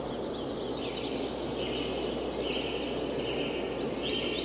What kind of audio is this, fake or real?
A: real